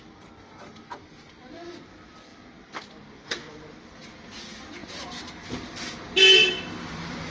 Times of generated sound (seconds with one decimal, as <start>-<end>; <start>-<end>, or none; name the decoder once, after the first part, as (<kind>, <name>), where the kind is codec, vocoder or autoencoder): none